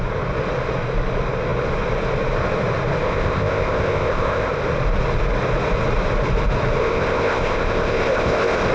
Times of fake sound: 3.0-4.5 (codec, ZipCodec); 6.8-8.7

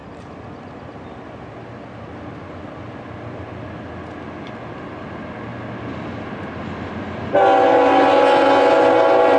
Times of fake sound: none

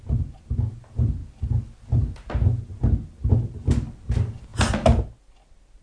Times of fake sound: none

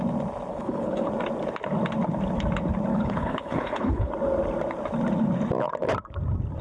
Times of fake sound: 0.5-1.1 (codec, HILCodec); 2.9-4.1

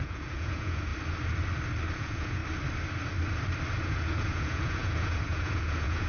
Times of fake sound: 0.0-0.9 (vocoder, Vocos); 2.0-2.4; 3.8-6.1

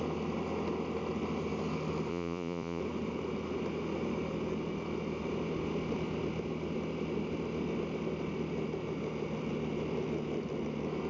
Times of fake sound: 2.1-2.8 (vocoder, Vocos)

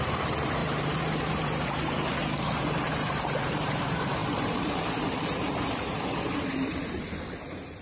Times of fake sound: 0.0-7.8 (vocoder, BigVGAN v2)

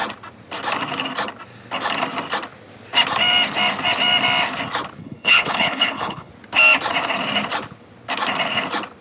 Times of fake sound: 5.0-6.3 (codec, HILCodec)